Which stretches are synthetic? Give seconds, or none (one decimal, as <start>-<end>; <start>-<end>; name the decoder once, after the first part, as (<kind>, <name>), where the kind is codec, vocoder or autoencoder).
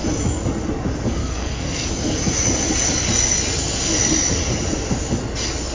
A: 1.2-1.9 (codec, SNAC)